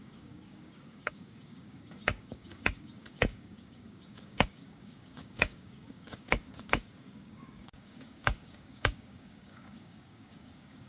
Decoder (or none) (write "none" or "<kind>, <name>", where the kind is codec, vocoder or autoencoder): codec, DAC